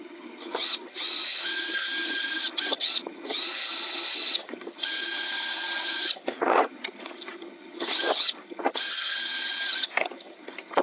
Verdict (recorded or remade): remade